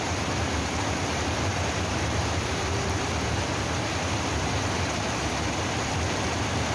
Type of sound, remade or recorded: remade